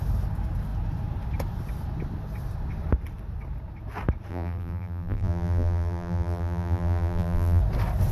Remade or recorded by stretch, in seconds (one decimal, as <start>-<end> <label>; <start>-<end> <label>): 0.0-4.3 recorded; 4.3-7.6 remade; 7.6-8.1 recorded